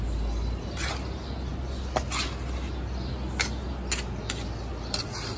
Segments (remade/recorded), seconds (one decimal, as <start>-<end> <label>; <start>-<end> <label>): 0.0-5.4 recorded